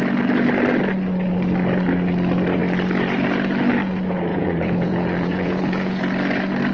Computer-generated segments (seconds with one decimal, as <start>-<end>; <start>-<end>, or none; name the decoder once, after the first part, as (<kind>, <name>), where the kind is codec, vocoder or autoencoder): 4.3-6.0 (vocoder, Vocos)